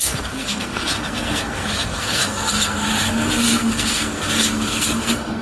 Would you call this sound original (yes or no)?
no